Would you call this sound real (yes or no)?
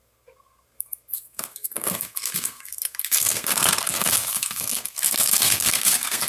no